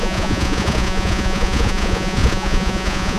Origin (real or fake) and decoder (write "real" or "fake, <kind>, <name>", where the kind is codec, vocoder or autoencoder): fake, vocoder, Vocos